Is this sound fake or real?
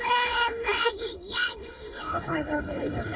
fake